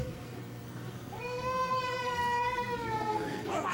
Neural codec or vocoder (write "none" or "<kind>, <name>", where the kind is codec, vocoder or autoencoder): codec, SNAC